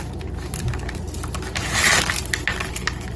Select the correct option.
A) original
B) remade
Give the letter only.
A